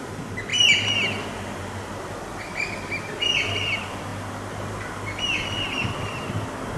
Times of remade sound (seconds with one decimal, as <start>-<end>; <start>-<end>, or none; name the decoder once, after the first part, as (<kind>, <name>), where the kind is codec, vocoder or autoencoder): none